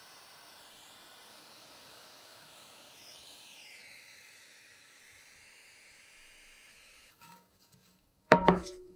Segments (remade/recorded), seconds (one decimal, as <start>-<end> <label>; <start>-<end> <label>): 0.0-1.3 recorded; 1.3-5.0 remade; 5.0-6.7 recorded; 6.7-9.0 remade